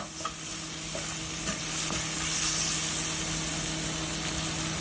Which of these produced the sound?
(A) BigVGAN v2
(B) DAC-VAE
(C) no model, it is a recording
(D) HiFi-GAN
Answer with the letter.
C